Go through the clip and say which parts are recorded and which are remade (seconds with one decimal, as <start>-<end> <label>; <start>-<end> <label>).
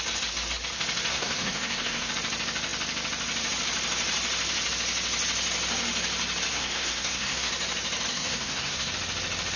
0.0-1.1 recorded; 1.1-2.1 remade; 2.1-6.5 recorded; 6.5-7.5 remade; 7.5-8.1 recorded; 8.1-8.9 remade; 8.9-9.6 recorded